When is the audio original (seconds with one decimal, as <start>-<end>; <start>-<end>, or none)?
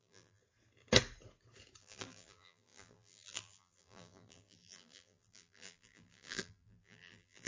0.4-1.8